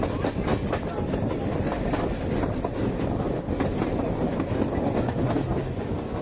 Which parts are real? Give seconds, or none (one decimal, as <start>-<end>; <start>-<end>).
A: 1.7-5.4